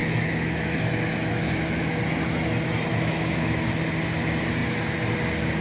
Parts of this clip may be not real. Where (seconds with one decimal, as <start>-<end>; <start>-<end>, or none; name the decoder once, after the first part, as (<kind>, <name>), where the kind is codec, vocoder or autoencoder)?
0.0-0.9 (autoencoder, DAC-VAE); 1.3-2.0; 2.9-3.7